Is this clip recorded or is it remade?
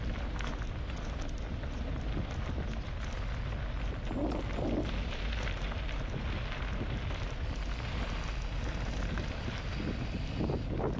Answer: recorded